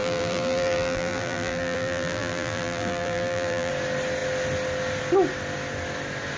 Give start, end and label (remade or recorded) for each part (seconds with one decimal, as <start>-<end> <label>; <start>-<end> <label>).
0.0-3.7 remade; 3.7-6.4 recorded